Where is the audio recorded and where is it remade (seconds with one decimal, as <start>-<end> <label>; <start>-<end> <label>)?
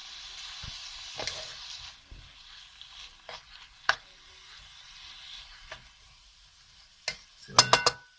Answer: 0.0-8.2 recorded